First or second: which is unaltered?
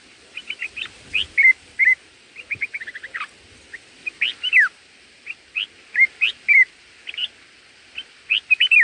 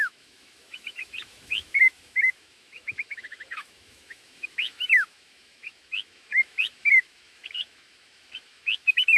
first